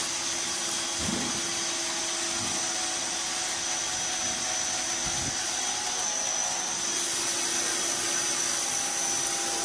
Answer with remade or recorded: recorded